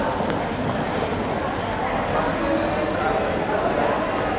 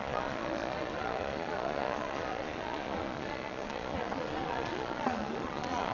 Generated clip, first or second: second